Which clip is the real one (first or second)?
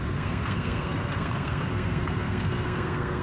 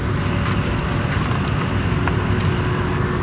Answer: second